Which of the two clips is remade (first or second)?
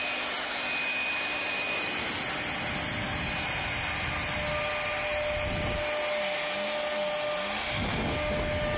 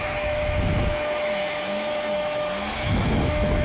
second